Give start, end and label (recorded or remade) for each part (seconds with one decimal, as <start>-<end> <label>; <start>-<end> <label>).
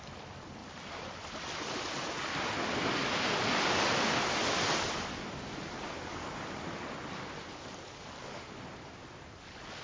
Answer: 0.0-9.8 recorded